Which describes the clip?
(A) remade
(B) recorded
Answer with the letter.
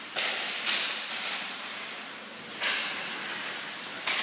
B